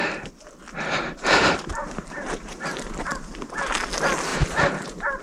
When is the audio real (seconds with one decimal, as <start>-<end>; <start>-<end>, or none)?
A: 3.0-4.3